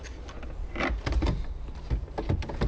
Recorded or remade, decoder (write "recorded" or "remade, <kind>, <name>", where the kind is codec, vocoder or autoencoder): recorded